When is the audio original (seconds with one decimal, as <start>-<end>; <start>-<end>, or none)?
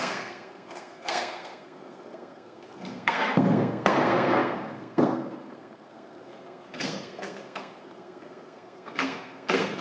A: none